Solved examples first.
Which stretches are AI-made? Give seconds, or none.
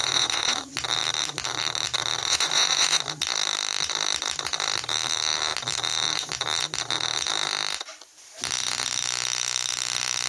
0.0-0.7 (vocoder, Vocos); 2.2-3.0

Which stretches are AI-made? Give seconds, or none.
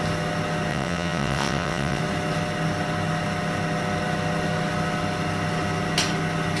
0.7-2.0 (vocoder, WaveNeXt)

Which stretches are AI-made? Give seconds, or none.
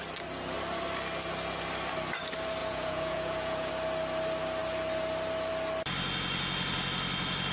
2.6-3.7 (vocoder, Vocos)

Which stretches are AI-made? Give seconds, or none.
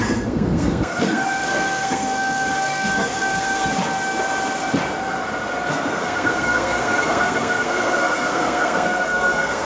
0.0-3.7 (codec, SNAC); 5.7-9.6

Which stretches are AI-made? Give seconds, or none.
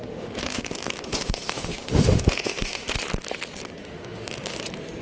0.0-3.0 (autoencoder, DAC-VAE); 3.8-4.6